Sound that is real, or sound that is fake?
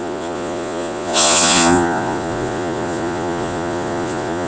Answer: fake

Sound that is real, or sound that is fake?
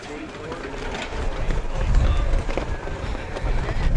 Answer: fake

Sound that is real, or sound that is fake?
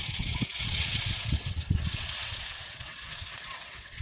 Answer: fake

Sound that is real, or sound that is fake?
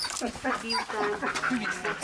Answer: real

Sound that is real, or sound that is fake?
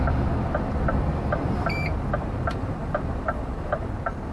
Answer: fake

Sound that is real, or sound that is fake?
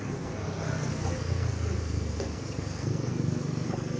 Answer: fake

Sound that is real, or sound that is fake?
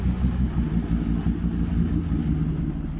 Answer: real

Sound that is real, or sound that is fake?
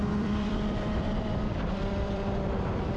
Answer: fake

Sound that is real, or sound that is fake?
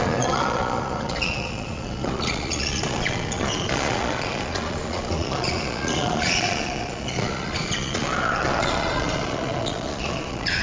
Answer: fake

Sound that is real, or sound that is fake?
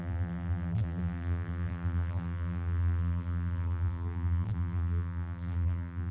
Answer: fake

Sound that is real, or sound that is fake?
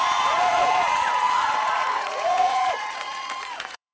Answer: fake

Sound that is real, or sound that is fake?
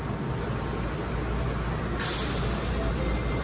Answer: real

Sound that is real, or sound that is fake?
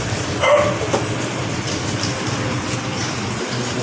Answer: real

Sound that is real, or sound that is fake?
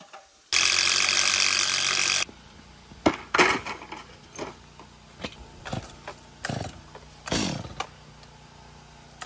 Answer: real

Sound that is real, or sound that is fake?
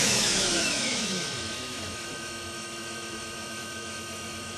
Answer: fake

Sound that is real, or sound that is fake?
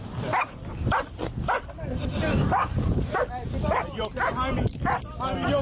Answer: real